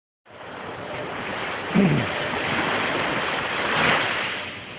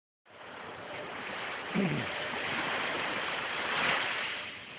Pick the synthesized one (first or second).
second